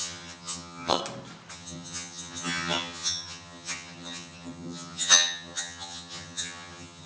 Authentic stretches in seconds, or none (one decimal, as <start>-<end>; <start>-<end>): 1.0-1.5